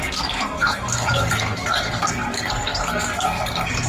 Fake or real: fake